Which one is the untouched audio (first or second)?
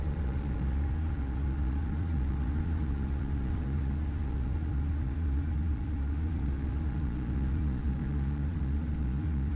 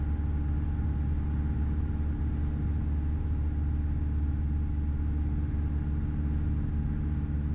second